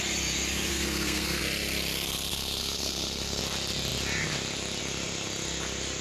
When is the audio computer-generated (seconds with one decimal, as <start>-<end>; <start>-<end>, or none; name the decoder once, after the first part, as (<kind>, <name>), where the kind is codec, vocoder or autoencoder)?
0.7-1.4 (codec, SNAC); 2.3-3.4